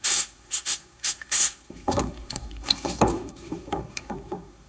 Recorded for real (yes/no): no